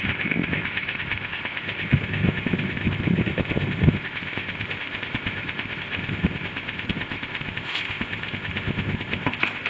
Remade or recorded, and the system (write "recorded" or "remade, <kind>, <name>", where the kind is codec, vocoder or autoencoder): remade, codec, ZipCodec